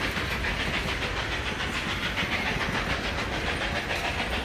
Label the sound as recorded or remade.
recorded